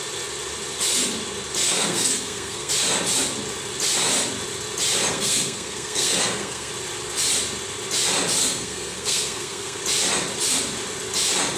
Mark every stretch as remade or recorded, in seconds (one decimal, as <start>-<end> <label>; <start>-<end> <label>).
0.0-1.6 recorded; 1.6-2.7 remade; 2.7-5.1 recorded; 5.1-6.7 remade; 6.7-8.4 recorded; 8.4-9.8 remade; 9.8-11.6 recorded